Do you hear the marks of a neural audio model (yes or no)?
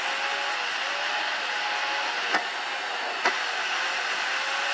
no